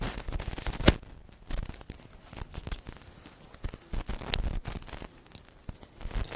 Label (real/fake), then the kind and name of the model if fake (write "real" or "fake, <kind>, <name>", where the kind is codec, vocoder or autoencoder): real